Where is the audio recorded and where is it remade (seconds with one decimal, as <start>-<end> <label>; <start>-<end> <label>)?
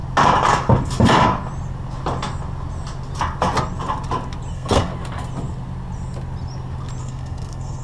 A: 0.0-4.5 recorded; 4.5-4.9 remade; 4.9-7.0 recorded; 7.0-7.8 remade